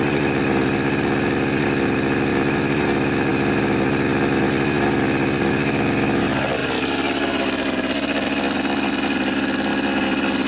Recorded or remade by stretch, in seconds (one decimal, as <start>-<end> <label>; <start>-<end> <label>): 0.0-10.5 recorded